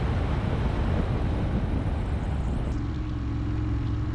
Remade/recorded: recorded